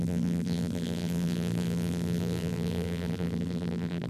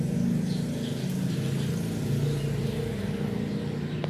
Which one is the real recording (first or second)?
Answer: second